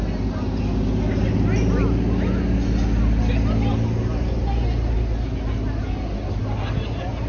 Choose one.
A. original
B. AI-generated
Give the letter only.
A